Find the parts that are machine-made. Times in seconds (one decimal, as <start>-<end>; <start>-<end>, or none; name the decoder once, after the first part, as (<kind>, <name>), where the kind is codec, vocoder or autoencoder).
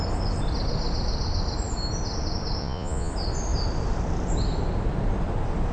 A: 2.6-3.1 (vocoder, Vocos)